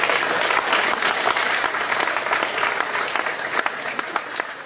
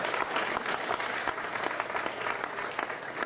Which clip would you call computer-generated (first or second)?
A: first